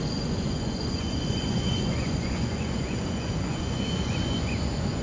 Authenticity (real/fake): fake